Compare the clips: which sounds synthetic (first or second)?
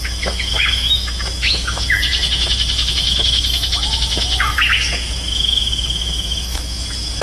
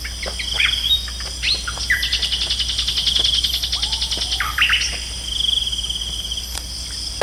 first